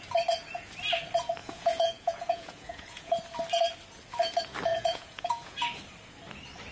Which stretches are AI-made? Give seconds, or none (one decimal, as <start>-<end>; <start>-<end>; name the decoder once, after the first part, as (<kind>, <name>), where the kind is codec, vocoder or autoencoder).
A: 1.4-3.2 (vocoder, Vocos); 4.7-5.6